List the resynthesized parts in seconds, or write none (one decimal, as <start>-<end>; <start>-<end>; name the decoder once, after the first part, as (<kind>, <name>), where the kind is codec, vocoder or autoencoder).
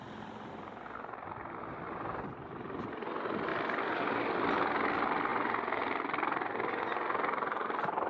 none